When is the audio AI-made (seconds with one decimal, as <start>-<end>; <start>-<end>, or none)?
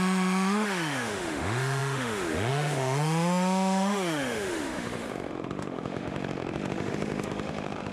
0.0-7.9